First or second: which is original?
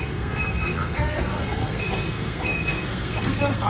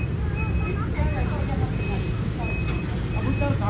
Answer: second